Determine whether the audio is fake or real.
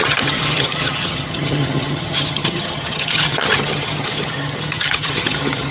fake